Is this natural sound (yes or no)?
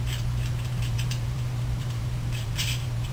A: no